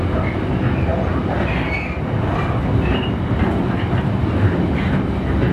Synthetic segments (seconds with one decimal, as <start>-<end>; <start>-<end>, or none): none